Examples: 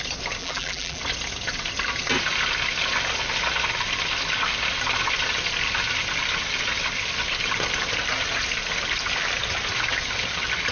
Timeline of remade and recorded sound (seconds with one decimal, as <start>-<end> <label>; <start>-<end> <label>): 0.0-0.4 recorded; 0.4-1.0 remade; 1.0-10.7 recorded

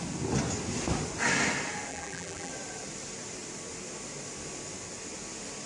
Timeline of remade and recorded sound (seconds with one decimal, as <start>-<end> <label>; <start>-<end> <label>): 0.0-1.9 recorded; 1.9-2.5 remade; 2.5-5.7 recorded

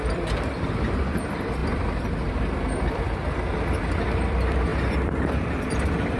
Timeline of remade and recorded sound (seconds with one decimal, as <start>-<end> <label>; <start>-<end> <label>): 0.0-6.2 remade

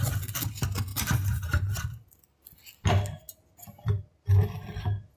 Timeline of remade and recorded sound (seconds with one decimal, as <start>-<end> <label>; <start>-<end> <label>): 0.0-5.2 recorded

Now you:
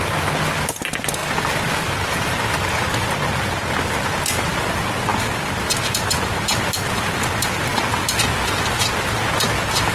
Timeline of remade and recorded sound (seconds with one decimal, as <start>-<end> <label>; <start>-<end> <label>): 0.0-9.9 recorded

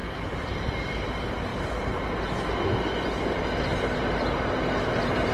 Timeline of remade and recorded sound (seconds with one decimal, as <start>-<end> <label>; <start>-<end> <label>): 0.0-1.5 remade; 1.5-4.0 recorded; 4.0-5.3 remade

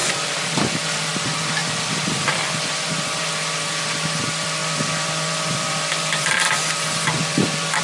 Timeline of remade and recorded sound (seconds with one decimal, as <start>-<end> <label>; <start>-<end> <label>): 0.0-0.8 remade; 0.8-1.6 recorded; 1.6-3.3 remade; 3.3-4.6 recorded; 4.6-7.8 remade

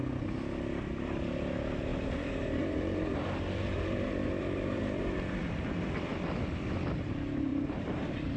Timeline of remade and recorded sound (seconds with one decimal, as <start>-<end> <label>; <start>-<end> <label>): 0.0-1.9 recorded; 1.9-4.8 remade; 4.8-7.5 recorded; 7.5-8.4 remade